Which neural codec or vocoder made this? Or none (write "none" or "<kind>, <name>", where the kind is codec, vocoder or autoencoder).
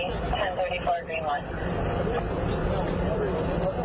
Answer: none